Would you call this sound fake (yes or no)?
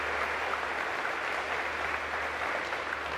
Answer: no